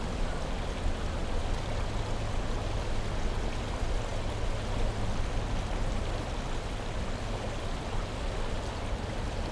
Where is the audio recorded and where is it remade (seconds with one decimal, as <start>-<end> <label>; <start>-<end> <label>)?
0.0-9.5 recorded